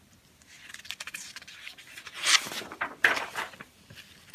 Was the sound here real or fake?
real